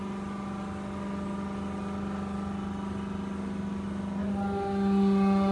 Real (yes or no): yes